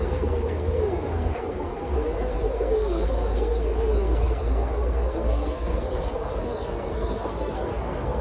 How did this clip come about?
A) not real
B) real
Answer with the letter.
A